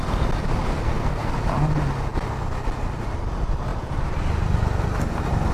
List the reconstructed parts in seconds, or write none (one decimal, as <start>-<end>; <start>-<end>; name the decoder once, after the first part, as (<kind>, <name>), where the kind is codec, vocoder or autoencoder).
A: 0.7-1.3 (codec, SNAC)